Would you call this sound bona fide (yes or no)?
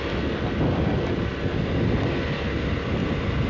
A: yes